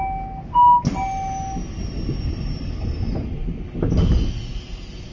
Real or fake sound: real